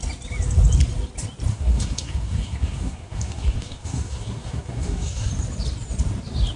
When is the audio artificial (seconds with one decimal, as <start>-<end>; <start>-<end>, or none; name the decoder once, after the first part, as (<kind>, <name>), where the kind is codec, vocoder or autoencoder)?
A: 1.5-5.3 (codec, SNAC)